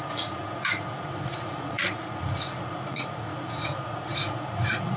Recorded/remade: remade